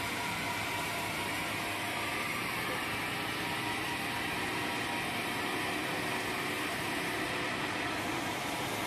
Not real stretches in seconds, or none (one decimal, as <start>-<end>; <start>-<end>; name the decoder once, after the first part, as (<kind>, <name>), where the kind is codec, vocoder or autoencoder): 0.0-2.9 (vocoder, BigVGAN v2); 6.7-8.9